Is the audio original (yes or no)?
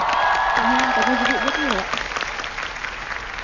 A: yes